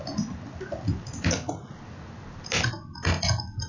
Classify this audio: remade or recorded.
recorded